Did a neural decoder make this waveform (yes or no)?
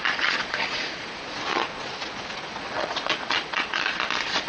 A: yes